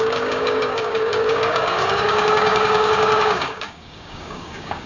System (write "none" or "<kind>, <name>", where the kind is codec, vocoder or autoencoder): codec, DAC